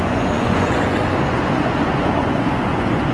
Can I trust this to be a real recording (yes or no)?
no